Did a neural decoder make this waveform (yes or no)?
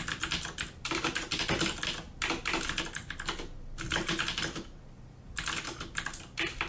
no